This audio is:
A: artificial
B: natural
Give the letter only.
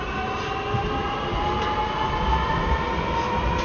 B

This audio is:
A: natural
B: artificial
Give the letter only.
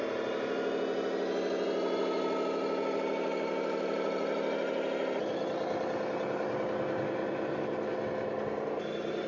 A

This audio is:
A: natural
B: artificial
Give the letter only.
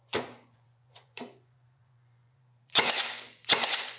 B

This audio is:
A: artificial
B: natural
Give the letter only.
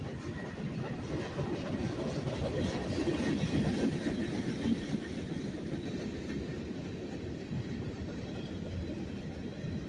B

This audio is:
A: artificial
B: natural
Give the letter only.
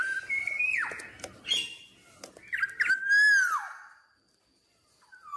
B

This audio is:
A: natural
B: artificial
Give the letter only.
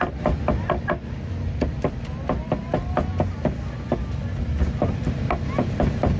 A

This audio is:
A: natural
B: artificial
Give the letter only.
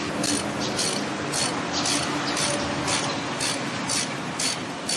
A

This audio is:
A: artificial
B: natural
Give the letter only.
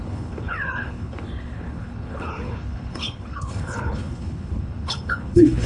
A